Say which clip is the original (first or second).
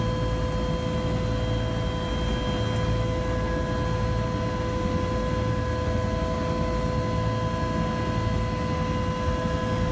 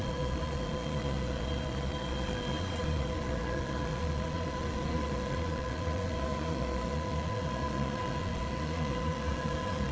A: first